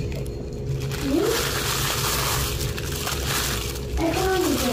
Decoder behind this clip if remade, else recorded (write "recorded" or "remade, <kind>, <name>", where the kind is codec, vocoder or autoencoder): recorded